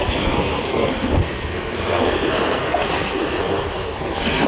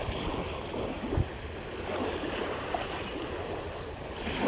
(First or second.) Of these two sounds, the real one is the second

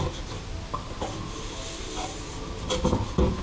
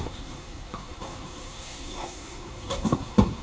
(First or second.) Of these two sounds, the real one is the first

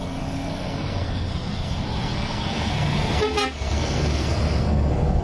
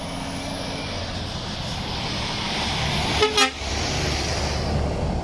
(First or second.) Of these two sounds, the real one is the second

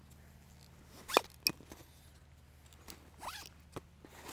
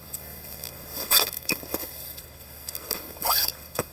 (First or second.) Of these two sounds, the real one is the first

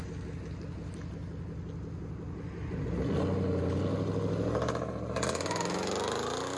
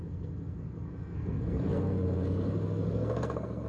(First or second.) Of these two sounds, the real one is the first